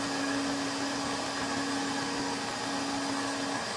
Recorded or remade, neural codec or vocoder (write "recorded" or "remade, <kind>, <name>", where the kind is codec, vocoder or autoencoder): recorded